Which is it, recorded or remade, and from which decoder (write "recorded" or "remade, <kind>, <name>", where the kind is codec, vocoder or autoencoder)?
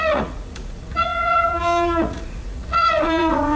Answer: remade, vocoder, Vocos